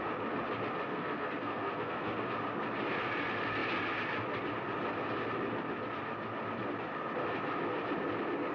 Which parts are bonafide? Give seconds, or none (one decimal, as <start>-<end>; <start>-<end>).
0.0-0.9; 2.3-8.5